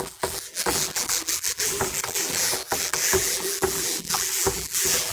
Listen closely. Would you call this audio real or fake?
fake